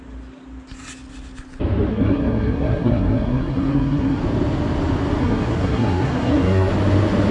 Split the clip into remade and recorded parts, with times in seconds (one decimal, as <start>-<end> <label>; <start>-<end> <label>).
0.0-1.9 recorded; 1.9-4.2 remade; 4.2-5.2 recorded; 5.2-6.7 remade; 6.7-7.3 recorded